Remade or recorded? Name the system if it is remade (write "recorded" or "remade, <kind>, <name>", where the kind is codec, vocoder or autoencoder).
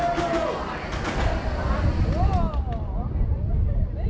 recorded